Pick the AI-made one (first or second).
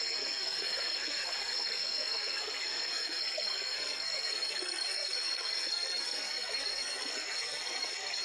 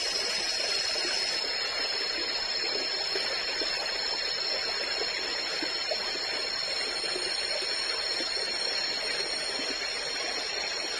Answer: first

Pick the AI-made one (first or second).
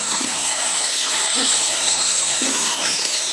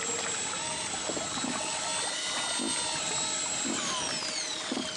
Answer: first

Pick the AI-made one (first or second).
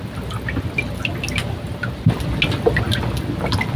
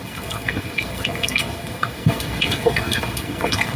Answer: second